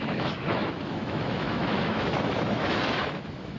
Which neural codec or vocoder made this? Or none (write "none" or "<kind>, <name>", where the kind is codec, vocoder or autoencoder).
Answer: autoencoder, DAC-VAE